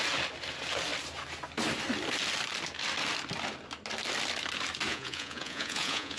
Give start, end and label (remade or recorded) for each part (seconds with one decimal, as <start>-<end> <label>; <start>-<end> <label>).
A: 0.0-4.9 recorded; 4.9-6.2 remade